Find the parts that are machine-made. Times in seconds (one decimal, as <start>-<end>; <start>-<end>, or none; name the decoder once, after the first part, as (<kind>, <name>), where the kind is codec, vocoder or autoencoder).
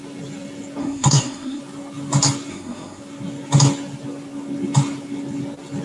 0.8-1.6 (codec, SNAC); 2.5-3.0